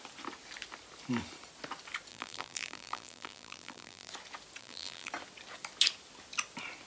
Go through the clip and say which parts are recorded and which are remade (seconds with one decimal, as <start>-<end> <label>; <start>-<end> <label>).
0.0-2.1 recorded; 2.1-4.1 remade; 4.1-4.6 recorded; 4.6-5.1 remade; 5.1-6.9 recorded